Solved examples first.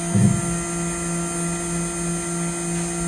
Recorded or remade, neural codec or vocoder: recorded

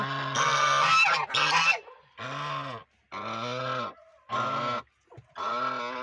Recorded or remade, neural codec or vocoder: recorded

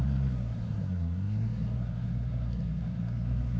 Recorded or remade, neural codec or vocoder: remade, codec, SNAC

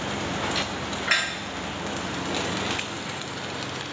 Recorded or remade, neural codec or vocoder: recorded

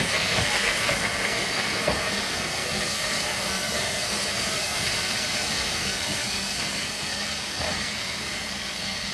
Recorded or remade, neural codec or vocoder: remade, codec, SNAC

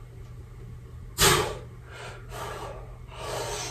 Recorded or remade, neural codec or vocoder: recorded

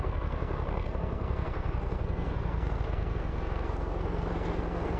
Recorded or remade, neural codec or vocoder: remade, codec, SNAC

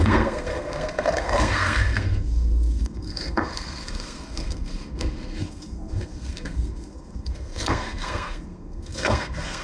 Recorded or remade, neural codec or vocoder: remade, codec, SNAC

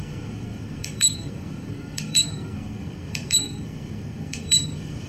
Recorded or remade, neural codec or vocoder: remade, codec, SNAC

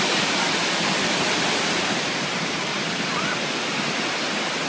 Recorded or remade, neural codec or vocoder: recorded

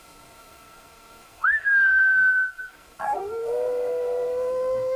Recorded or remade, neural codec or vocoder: remade, codec, SNAC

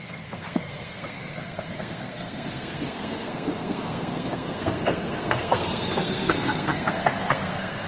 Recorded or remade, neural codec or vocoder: remade, codec, SNAC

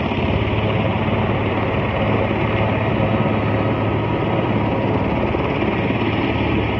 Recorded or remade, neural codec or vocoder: recorded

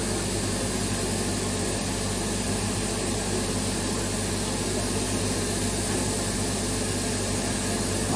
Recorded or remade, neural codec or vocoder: recorded